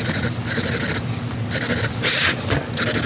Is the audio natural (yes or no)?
yes